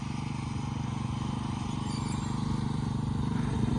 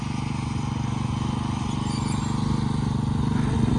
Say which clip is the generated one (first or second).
first